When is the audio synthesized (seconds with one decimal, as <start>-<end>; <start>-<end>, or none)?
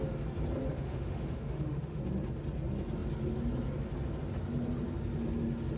0.7-2.0